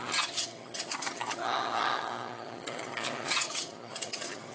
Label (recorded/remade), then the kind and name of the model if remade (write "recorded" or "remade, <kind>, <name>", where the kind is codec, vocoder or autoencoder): remade, vocoder, HiFi-GAN